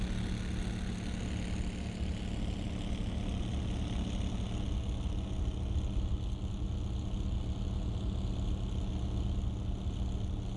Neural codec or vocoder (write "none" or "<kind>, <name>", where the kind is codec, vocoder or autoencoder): none